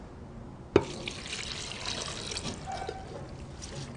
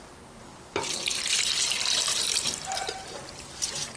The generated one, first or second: second